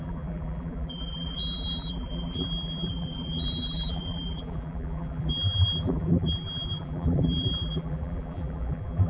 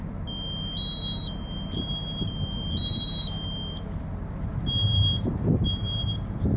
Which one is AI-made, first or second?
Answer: first